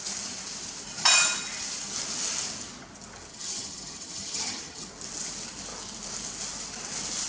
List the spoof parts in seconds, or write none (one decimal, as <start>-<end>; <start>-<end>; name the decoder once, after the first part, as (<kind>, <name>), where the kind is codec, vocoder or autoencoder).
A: 3.3-4.9 (vocoder, HiFi-GAN)